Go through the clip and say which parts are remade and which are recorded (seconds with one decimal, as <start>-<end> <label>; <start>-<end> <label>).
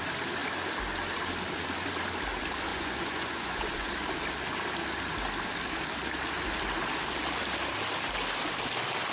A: 0.0-2.7 recorded; 2.7-3.9 remade; 3.9-9.1 recorded